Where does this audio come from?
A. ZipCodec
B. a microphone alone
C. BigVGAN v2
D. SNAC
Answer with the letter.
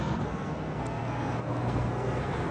D